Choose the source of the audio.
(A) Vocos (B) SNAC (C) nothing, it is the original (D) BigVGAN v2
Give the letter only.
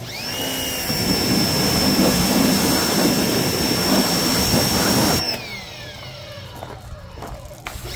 C